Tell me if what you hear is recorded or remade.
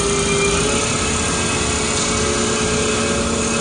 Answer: recorded